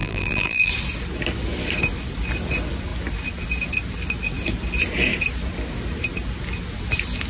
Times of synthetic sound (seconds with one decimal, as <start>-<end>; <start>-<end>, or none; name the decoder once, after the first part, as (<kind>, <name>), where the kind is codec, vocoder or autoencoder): 0.0-0.7 (vocoder, BigVGAN v2)